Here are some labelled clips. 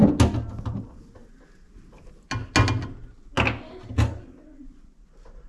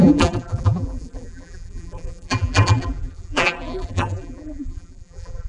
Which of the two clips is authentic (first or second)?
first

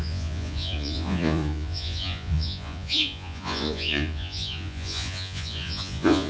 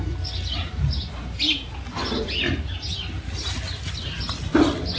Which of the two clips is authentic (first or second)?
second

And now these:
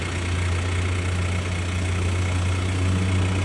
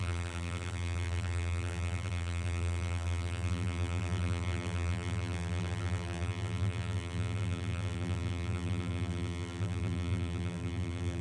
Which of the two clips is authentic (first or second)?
first